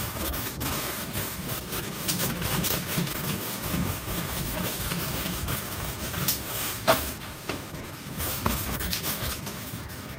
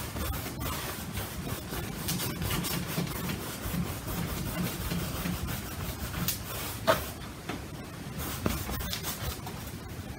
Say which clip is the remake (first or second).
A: first